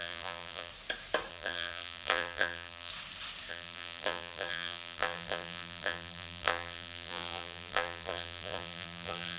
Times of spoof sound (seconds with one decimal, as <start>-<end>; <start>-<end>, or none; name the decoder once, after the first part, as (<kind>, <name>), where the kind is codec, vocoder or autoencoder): 0.0-0.7 (vocoder, BigVGAN v2); 1.3-2.9; 3.5-9.4